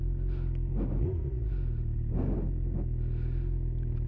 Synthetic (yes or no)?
no